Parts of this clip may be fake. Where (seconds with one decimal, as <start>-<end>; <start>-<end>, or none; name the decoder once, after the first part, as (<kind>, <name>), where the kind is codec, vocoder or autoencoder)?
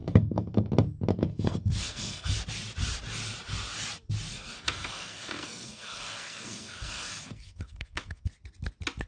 0.0-0.7 (codec, SNAC); 1.1-2.3; 4.3-8.3